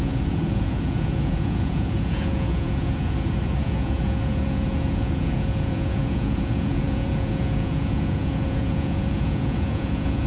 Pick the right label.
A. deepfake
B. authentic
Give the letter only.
A